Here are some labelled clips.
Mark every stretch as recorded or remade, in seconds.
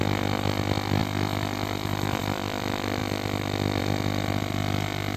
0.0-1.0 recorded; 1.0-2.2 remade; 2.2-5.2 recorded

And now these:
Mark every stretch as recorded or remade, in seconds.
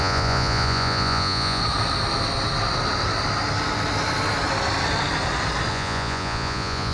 0.0-1.6 remade; 1.6-5.7 recorded; 5.7-6.9 remade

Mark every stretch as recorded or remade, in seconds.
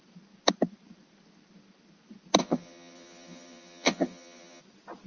0.0-2.4 recorded; 2.4-4.6 remade; 4.6-5.1 recorded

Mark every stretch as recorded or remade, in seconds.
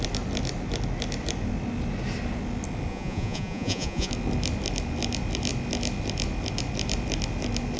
0.0-2.9 recorded; 2.9-4.1 remade; 4.1-7.8 recorded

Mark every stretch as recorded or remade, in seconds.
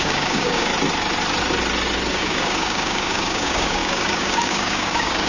0.0-0.7 remade; 0.7-2.1 recorded; 2.1-5.3 remade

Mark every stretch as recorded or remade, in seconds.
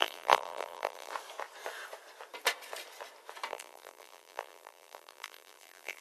0.0-1.1 remade; 1.1-3.5 recorded; 3.5-6.0 remade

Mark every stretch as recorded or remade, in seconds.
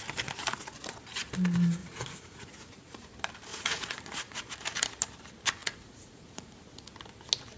0.0-1.8 recorded; 1.8-3.1 remade; 3.1-3.5 recorded; 3.5-4.4 remade; 4.4-5.6 recorded; 5.6-6.9 remade; 6.9-7.6 recorded